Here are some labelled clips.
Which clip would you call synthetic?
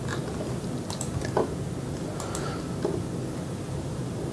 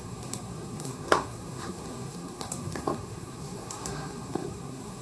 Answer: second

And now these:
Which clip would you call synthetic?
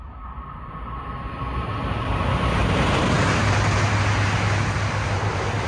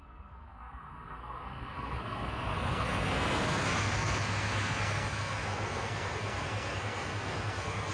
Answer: second